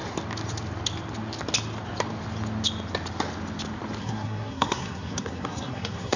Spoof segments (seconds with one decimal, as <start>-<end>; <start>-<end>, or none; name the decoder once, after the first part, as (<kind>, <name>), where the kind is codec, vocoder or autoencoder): 4.0-6.2 (codec, SNAC)